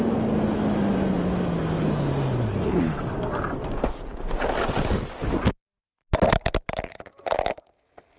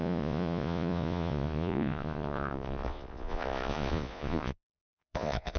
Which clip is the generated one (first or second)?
second